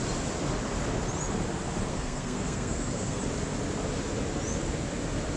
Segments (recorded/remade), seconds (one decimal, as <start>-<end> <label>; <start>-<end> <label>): 0.0-1.9 recorded; 1.9-3.2 remade; 3.2-5.4 recorded